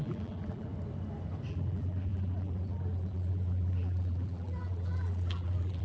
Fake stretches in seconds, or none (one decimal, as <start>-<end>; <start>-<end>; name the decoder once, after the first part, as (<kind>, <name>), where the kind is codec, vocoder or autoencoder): 0.0-0.7 (vocoder, BigVGAN v2); 1.5-5.8